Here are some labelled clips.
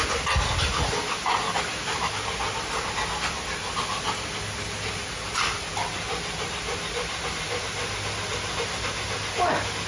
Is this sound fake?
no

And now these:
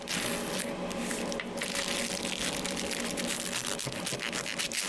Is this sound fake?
no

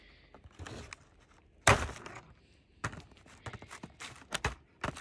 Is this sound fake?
no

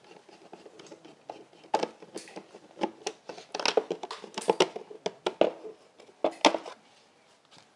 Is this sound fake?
no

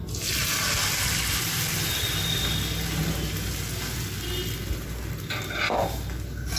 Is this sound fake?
no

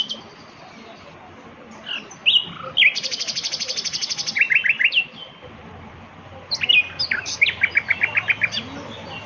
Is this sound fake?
no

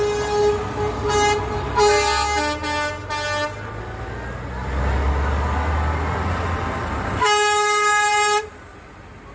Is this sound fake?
no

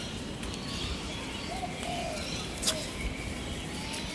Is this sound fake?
no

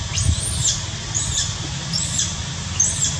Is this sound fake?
no